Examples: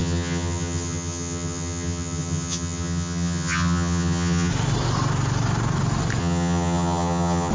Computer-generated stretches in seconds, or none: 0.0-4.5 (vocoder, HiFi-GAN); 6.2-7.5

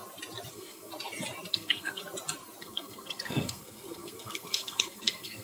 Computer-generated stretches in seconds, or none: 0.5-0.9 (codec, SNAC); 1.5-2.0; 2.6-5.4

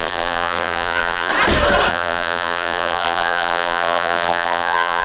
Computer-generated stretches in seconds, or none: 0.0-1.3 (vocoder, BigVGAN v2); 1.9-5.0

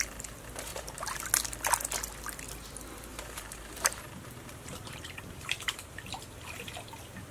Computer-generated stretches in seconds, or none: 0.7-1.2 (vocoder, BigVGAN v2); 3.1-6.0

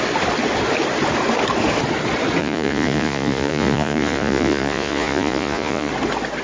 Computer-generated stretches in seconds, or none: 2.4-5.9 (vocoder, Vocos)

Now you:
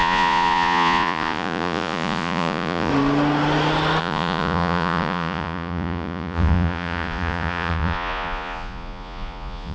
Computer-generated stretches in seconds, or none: 0.0-2.9 (vocoder, Vocos); 4.0-9.7

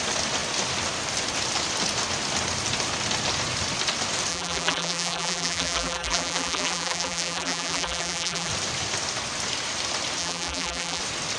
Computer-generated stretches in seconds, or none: 4.3-8.5 (vocoder, BigVGAN v2); 10.2-11.0